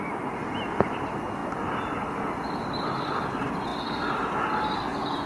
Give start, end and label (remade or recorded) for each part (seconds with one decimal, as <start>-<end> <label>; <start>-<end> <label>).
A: 0.0-1.4 recorded; 1.4-3.0 remade; 3.0-5.3 recorded